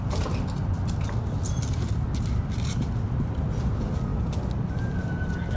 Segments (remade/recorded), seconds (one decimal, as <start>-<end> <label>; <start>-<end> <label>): 0.0-5.6 recorded